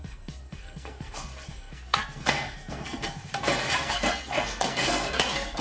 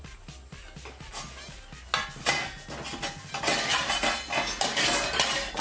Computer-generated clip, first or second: first